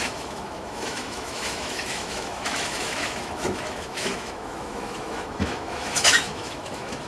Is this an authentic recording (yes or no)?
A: no